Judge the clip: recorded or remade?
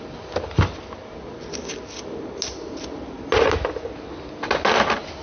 recorded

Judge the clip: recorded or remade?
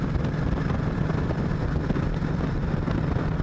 recorded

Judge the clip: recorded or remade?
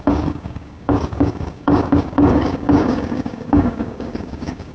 remade